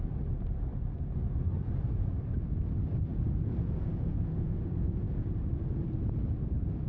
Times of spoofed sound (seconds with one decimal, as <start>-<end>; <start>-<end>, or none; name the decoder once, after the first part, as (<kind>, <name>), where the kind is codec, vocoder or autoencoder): 3.1-5.3 (vocoder, Vocos)